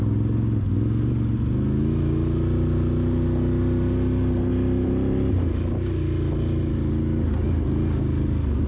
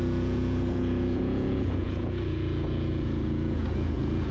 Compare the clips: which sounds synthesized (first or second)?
second